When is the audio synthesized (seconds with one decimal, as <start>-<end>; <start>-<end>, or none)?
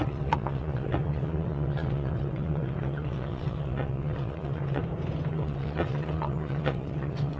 0.0-4.8; 5.3-7.4